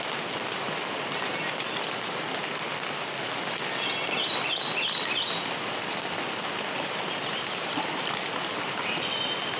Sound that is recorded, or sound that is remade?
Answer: recorded